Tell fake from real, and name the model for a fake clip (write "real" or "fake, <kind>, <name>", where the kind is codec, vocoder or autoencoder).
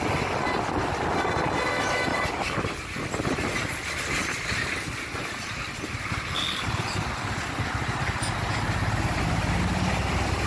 real